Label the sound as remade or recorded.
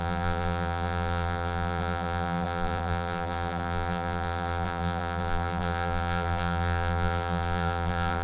remade